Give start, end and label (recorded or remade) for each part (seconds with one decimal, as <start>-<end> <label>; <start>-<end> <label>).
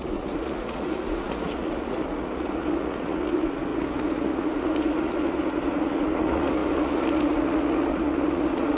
0.0-8.8 remade